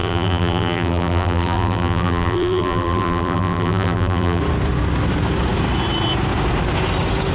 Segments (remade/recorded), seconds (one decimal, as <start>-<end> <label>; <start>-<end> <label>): 0.0-4.4 remade; 4.4-7.3 recorded